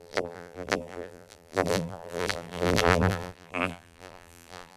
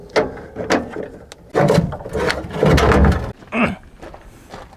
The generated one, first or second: first